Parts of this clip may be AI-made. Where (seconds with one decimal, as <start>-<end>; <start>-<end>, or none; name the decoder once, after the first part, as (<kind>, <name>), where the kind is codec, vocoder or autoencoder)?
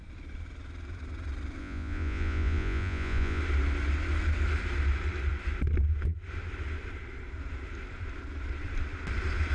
1.6-3.4 (vocoder, Vocos)